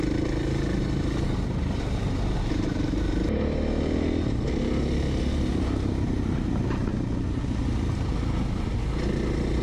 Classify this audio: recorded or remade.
recorded